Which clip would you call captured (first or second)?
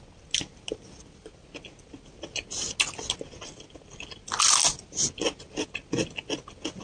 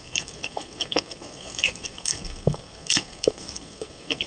first